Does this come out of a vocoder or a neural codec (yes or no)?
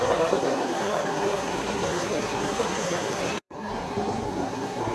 yes